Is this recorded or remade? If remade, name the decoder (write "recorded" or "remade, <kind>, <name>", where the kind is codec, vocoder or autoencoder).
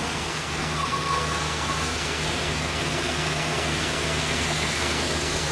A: remade, codec, SNAC